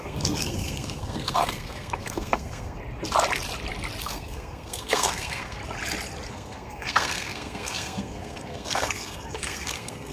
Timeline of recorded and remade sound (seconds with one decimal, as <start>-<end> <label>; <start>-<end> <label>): 0.0-2.8 remade; 2.8-4.0 recorded; 4.0-5.6 remade; 5.6-6.3 recorded; 6.3-10.1 remade